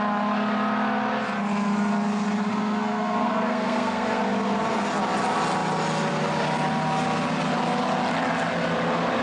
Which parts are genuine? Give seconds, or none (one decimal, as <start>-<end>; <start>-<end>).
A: 0.0-2.5; 4.2-9.2